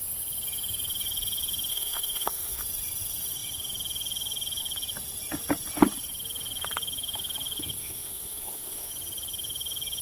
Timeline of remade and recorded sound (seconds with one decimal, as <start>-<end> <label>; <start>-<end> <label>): 0.0-1.7 recorded; 1.7-2.6 remade; 2.6-7.8 recorded; 7.8-8.9 remade; 8.9-10.0 recorded